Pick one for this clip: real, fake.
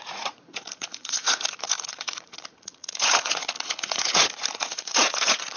fake